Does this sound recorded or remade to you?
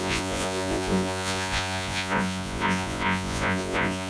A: remade